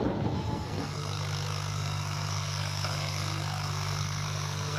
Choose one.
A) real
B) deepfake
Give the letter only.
B